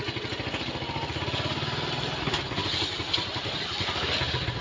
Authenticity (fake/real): real